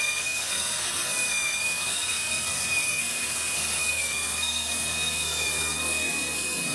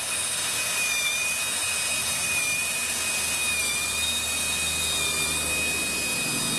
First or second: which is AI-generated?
first